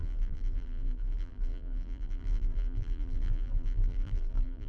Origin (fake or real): fake